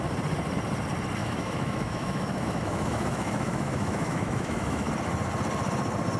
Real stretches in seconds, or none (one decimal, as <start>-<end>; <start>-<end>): 0.0-1.2; 4.9-6.2